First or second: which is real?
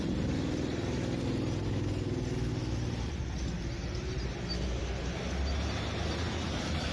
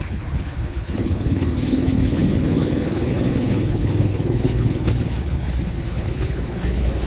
first